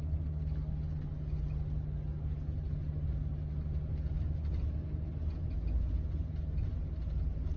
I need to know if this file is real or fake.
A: real